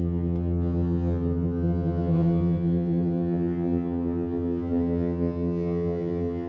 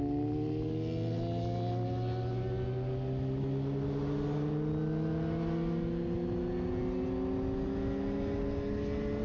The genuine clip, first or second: second